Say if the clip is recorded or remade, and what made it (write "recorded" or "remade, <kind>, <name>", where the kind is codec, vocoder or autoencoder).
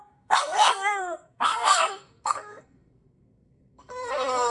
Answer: remade, codec, SNAC